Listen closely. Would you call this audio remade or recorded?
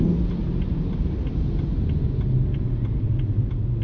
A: recorded